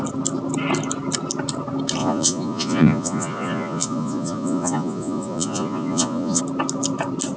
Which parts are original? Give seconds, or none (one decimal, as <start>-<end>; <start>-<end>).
0.0-2.0; 6.4-7.4